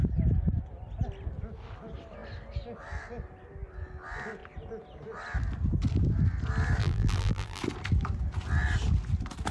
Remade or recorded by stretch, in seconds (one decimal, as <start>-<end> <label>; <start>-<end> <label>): 0.0-6.8 recorded; 6.8-7.6 remade; 7.6-9.5 recorded